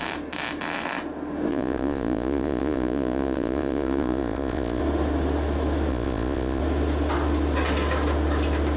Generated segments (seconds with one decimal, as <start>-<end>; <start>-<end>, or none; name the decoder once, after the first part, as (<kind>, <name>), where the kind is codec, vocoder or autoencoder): 1.5-4.8 (vocoder, Vocos); 5.9-6.6